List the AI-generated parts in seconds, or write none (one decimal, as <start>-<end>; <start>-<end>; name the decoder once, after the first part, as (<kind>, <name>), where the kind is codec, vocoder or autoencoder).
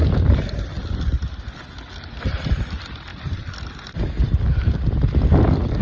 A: 0.0-1.0 (vocoder, BigVGAN v2); 3.1-5.8